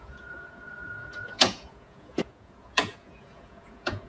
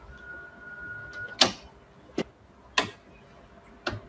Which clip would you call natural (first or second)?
second